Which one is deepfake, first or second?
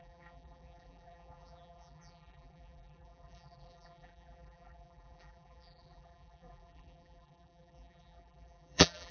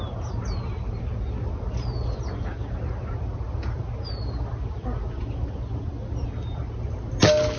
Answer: first